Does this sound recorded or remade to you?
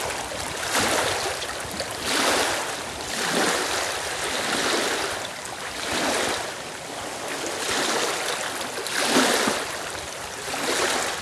recorded